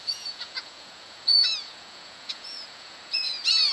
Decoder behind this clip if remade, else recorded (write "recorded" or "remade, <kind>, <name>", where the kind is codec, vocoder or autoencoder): remade, vocoder, Vocos